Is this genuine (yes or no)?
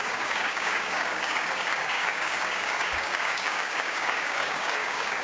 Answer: no